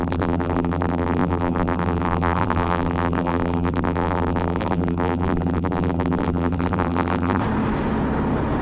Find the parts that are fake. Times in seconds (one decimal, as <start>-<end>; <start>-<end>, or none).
0.0-7.4

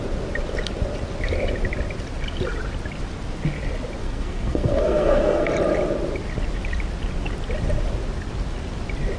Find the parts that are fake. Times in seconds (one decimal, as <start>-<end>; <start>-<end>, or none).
4.0-5.5

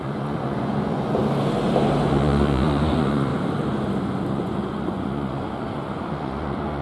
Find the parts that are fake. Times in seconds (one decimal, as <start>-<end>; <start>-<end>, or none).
0.0-1.2; 2.1-3.3; 4.3-6.8

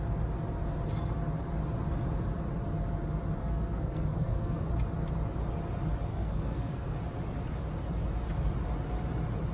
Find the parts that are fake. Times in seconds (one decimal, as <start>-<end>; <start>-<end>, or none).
3.4-4.7; 6.1-7.0

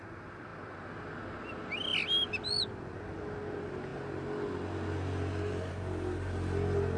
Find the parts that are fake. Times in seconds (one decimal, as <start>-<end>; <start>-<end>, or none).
none